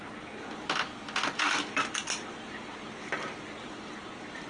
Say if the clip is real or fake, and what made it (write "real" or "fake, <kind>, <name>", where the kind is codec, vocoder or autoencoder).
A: real